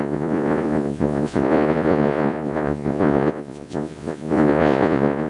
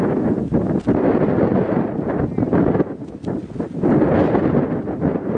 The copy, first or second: first